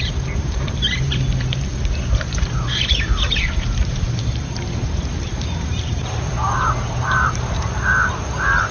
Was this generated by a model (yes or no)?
yes